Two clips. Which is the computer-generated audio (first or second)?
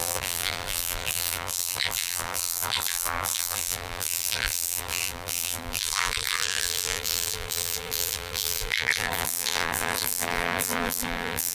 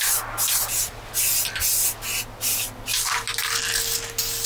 first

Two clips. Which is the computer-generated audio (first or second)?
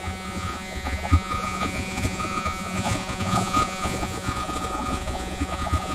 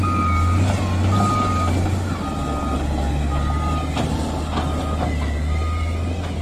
first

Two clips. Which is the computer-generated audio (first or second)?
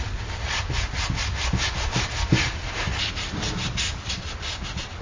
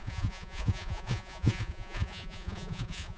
second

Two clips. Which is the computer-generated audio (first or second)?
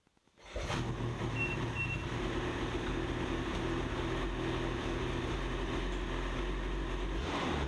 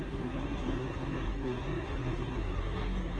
second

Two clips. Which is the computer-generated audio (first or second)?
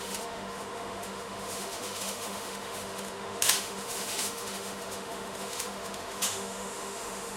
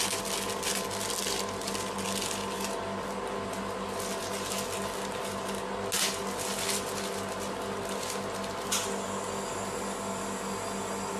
first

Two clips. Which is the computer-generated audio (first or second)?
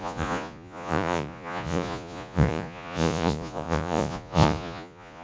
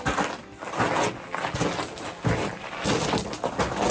first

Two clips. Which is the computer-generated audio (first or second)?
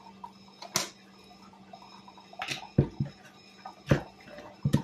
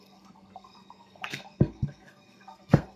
second